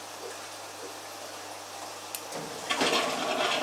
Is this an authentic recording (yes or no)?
yes